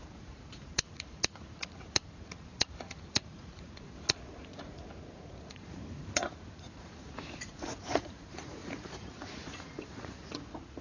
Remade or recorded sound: remade